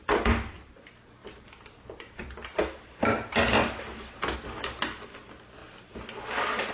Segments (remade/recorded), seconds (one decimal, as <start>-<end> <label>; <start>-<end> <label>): 0.0-1.2 recorded; 1.2-4.2 remade; 4.2-5.6 recorded; 5.6-6.7 remade